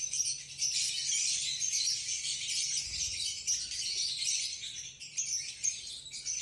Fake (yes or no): no